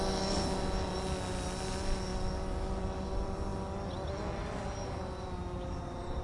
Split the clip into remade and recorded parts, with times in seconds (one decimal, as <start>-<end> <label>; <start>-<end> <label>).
0.0-6.2 recorded